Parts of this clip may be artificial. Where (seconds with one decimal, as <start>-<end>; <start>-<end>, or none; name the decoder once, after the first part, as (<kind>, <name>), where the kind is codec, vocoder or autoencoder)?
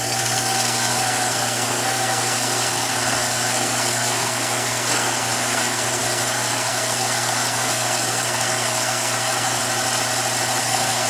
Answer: 0.0-9.6 (codec, SNAC); 10.6-11.1